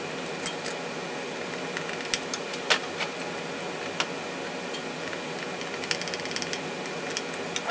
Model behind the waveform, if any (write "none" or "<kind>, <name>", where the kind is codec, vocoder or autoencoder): none